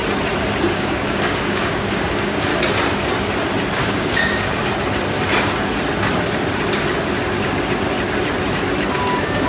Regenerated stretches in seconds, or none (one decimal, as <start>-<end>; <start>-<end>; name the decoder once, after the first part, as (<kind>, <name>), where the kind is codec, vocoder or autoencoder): 0.7-2.5 (codec, DAC); 3.8-4.6; 8.9-9.5